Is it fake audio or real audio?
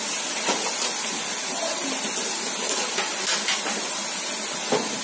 real